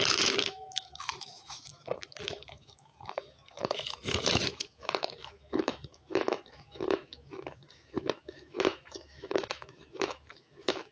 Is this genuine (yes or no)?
no